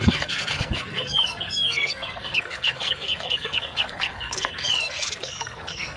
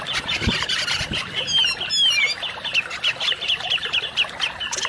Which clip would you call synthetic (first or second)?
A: first